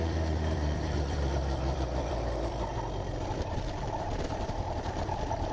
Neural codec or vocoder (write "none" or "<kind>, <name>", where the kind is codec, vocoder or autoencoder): vocoder, BigVGAN v2